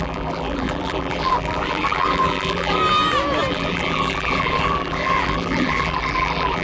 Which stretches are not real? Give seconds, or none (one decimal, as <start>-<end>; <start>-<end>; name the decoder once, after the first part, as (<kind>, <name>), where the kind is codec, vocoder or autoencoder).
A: 0.0-2.8 (vocoder, BigVGAN v2); 3.5-6.6